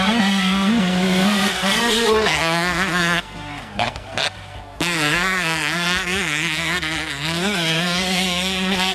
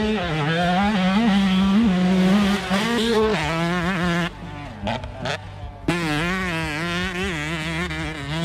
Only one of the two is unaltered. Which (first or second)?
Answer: second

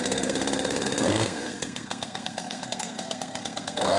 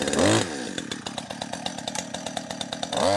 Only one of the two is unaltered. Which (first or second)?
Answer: second